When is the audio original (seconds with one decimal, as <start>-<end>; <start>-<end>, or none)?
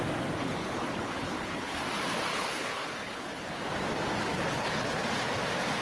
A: 0.0-0.4; 1.8-2.3; 3.6-4.3; 5.0-5.8